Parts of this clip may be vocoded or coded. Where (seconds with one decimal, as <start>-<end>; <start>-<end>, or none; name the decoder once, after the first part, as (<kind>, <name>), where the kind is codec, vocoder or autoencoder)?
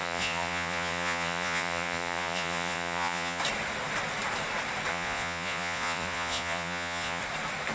0.0-3.4 (vocoder, Vocos); 4.9-7.2